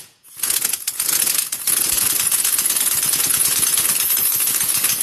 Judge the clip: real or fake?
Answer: fake